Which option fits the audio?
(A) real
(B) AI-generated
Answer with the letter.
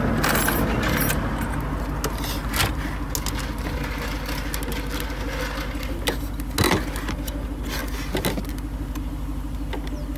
A